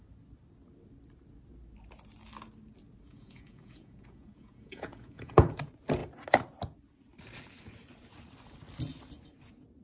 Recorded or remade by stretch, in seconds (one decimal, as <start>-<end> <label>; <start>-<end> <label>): 0.0-3.1 recorded; 3.1-5.6 remade; 5.6-9.8 recorded